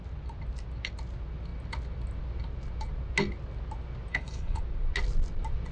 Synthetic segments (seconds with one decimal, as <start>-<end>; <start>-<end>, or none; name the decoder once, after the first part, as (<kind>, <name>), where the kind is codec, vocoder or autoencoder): 4.1-4.6 (codec, HILCodec)